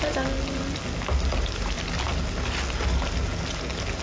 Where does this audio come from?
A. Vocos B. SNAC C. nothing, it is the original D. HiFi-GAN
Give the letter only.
C